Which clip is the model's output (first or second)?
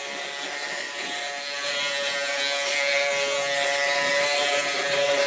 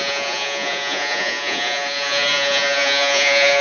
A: second